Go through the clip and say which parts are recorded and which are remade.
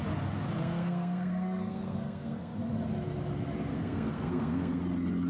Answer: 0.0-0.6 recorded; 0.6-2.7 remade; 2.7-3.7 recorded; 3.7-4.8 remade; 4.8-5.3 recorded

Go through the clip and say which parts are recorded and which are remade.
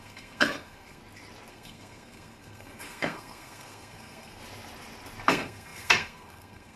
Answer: 0.0-1.0 remade; 1.0-1.5 recorded; 1.5-4.4 remade; 4.4-5.3 recorded; 5.3-6.8 remade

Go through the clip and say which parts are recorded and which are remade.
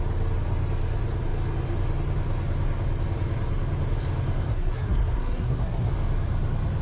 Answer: 0.0-4.5 recorded; 4.5-5.9 remade; 5.9-6.8 recorded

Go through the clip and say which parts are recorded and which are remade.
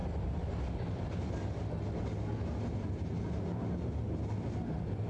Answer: 0.0-5.1 recorded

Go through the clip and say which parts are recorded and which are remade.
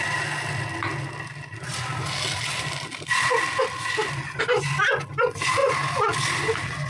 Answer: 0.0-6.9 recorded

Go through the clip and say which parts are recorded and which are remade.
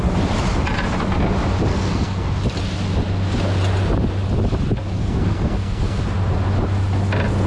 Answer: 0.0-1.7 recorded; 1.7-2.3 remade; 2.3-5.0 recorded; 5.0-6.0 remade; 6.0-7.5 recorded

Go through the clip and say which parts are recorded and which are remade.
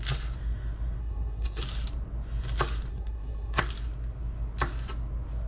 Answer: 0.0-1.0 recorded; 1.0-1.6 remade; 1.6-2.9 recorded; 2.9-3.6 remade; 3.6-5.5 recorded